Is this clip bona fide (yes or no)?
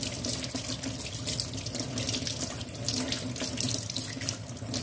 yes